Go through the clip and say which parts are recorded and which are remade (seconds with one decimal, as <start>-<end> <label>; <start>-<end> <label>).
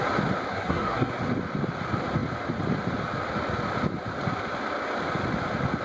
0.0-0.5 recorded; 0.5-1.1 remade; 1.1-5.8 recorded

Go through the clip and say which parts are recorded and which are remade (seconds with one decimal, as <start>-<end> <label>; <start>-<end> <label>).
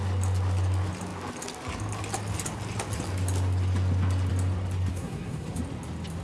0.0-4.9 recorded; 4.9-5.6 remade; 5.6-6.2 recorded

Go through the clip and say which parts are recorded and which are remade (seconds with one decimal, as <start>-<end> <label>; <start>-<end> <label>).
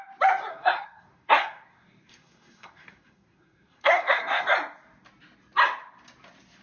0.0-0.5 recorded; 0.5-4.5 remade; 4.5-6.6 recorded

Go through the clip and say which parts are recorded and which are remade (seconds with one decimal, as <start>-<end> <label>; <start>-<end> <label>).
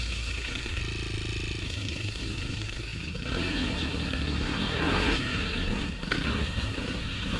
0.0-0.8 remade; 0.8-1.6 recorded; 1.6-7.4 remade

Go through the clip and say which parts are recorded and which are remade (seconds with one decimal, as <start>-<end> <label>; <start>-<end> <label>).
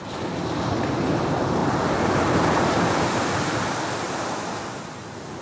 0.0-5.4 recorded